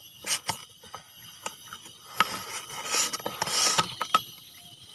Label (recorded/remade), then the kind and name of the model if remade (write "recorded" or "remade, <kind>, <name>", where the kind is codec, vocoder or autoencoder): recorded